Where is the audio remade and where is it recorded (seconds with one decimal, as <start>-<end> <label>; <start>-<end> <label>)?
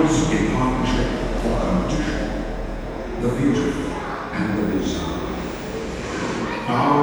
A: 0.0-1.5 recorded; 1.5-3.2 remade; 3.2-7.0 recorded